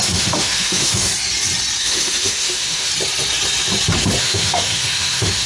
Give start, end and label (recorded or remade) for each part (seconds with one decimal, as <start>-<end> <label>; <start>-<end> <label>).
0.0-1.1 remade; 1.1-1.8 recorded; 1.8-2.9 remade; 2.9-4.2 recorded; 4.2-5.5 remade